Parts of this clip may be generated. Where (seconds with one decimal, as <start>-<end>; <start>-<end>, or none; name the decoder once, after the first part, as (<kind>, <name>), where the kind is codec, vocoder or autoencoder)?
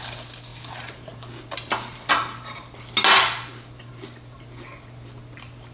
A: none